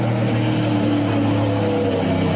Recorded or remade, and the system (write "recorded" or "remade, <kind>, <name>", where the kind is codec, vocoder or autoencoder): recorded